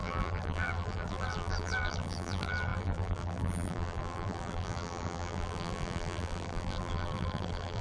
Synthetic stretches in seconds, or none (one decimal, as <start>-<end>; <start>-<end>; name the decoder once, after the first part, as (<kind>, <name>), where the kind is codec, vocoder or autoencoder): 0.0-7.8 (vocoder, BigVGAN v2)